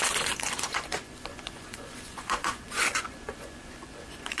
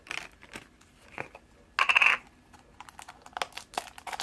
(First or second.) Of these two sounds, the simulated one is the first